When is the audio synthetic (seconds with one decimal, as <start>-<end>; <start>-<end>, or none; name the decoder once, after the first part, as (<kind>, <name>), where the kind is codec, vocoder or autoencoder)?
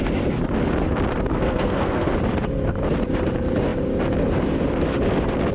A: 1.3-2.1 (codec, SNAC)